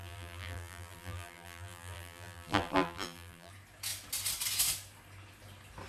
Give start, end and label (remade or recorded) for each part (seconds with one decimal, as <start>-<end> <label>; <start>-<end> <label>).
0.0-3.5 remade; 3.5-5.9 recorded